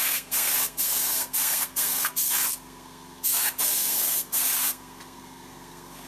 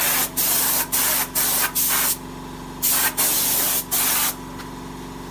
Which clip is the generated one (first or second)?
first